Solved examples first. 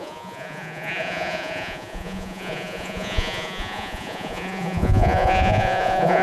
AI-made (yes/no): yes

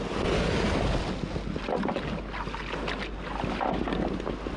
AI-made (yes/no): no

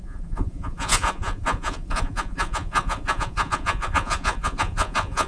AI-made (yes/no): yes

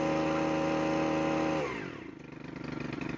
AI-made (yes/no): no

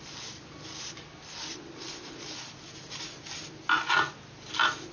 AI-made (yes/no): no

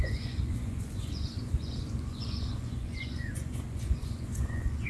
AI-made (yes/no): yes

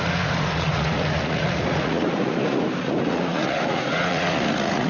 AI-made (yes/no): yes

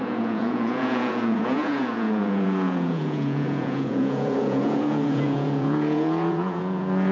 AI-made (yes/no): yes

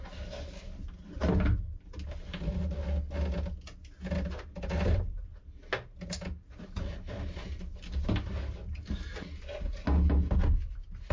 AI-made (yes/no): no